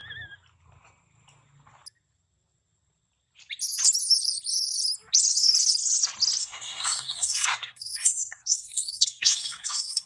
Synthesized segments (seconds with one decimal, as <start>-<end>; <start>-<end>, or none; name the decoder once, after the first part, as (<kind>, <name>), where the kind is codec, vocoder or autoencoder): 6.4-10.1 (codec, SNAC)